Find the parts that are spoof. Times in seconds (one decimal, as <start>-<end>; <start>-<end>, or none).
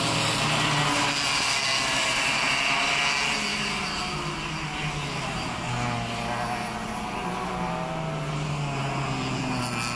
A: 3.5-4.0